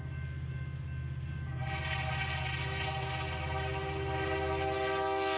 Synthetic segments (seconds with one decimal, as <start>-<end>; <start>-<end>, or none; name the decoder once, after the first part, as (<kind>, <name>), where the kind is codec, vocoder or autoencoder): none